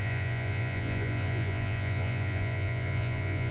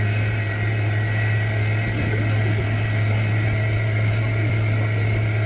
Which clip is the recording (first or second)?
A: second